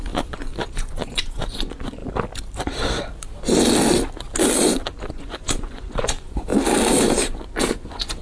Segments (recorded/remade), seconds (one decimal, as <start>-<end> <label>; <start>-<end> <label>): 0.0-2.0 remade; 2.0-5.1 recorded; 5.1-6.5 remade; 6.5-7.7 recorded; 7.7-8.2 remade